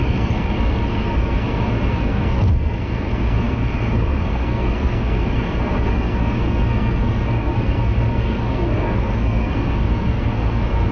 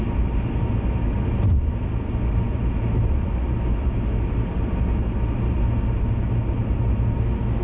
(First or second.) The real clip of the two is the second